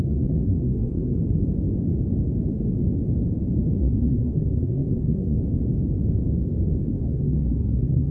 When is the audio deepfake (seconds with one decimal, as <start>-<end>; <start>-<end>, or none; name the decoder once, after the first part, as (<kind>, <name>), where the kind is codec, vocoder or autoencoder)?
0.0-1.2 (codec, SNAC); 3.8-5.4; 6.8-8.1